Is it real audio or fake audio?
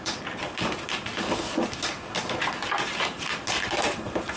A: real